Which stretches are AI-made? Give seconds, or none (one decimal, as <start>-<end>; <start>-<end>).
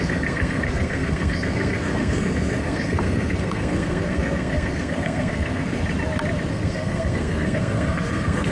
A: 0.0-5.8; 6.5-8.5